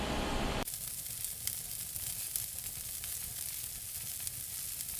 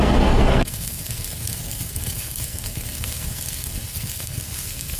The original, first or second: first